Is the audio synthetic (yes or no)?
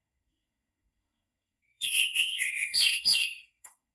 yes